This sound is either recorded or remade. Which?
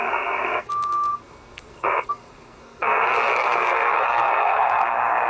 remade